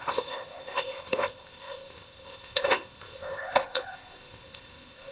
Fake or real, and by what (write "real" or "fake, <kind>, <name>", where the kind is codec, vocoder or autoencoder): fake, codec, ZipCodec